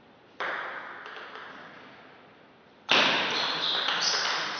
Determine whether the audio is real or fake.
real